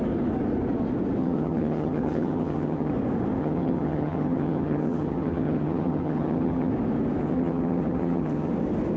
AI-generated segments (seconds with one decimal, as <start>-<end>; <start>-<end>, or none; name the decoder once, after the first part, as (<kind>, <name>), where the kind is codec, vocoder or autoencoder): 1.2-2.9 (vocoder, HiFi-GAN); 3.4-6.7; 7.2-8.5